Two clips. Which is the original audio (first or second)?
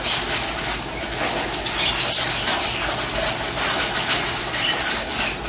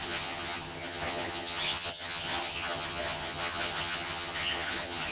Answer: first